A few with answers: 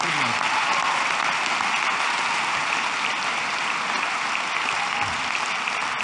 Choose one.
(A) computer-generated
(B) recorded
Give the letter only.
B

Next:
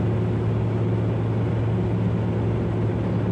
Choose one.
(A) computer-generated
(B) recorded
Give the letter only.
B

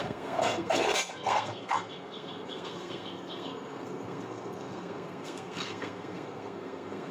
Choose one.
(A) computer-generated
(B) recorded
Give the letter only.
A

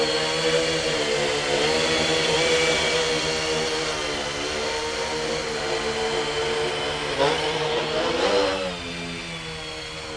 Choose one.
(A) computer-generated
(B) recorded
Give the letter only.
B